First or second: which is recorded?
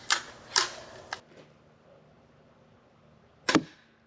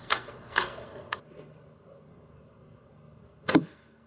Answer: first